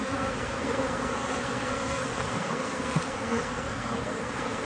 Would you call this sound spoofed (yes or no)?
yes